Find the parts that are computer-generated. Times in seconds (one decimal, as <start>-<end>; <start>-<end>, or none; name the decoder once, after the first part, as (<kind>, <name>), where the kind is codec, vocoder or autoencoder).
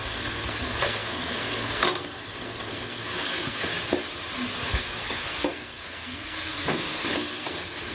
0.0-3.7 (codec, SNAC); 4.6-7.9